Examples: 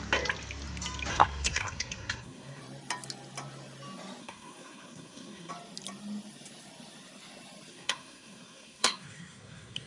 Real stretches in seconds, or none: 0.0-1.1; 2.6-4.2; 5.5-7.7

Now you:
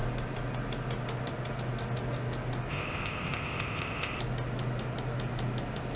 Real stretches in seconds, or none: 0.0-2.7; 4.2-6.0

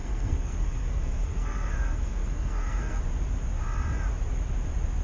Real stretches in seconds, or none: 3.0-5.0